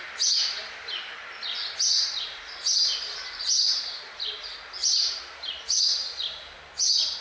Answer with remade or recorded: recorded